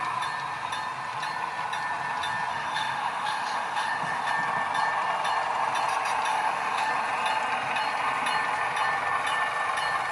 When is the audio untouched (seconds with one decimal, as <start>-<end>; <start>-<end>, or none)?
0.0-2.5; 4.3-6.3; 6.9-10.1